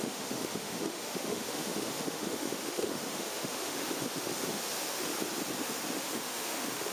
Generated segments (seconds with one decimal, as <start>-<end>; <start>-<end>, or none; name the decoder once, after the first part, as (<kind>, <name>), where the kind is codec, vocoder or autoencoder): 0.0-5.1 (autoencoder, DAC-VAE); 5.6-6.9